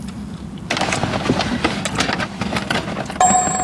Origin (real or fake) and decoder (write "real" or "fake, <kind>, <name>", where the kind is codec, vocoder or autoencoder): real